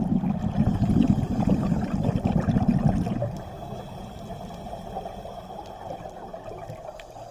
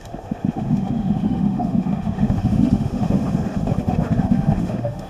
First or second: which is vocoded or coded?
second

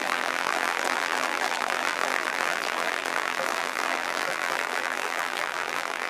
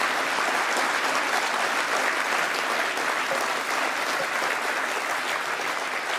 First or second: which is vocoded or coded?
first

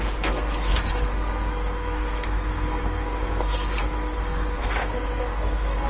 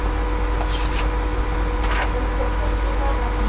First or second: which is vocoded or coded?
first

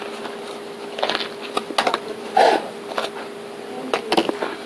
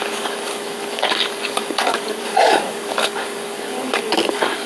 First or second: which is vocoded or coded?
second